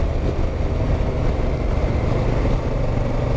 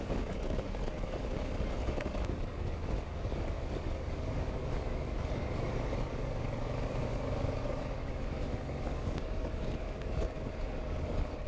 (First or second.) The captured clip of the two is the first